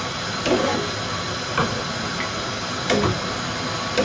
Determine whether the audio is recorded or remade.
recorded